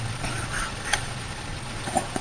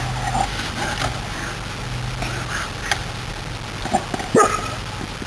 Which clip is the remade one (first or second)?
first